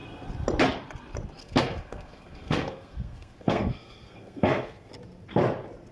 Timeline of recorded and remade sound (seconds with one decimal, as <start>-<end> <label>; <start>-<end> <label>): 0.0-1.4 recorded; 1.4-4.9 remade; 4.9-5.9 recorded